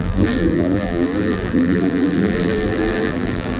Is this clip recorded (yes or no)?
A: no